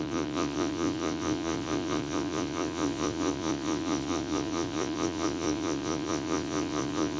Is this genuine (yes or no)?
no